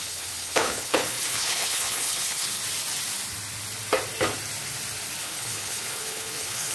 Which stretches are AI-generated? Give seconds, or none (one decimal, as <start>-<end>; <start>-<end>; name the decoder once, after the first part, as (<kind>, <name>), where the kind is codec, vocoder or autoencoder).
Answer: 0.0-2.6 (codec, HILCodec); 5.2-6.7